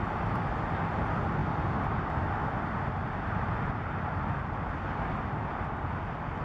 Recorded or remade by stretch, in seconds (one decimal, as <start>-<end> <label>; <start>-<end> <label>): 0.0-6.4 recorded